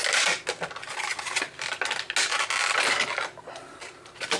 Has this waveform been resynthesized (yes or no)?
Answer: no